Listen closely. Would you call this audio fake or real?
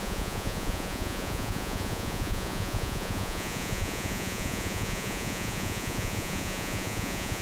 fake